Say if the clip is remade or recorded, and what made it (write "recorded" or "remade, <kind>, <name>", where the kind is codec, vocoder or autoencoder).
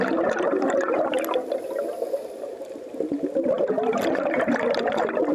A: recorded